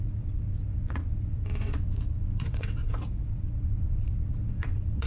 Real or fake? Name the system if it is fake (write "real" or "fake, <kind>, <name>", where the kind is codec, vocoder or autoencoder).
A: fake, vocoder, WaveNeXt